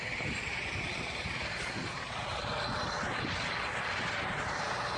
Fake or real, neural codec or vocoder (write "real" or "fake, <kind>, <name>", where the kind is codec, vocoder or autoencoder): real